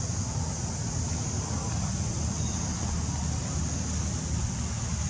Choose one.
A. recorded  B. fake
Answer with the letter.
A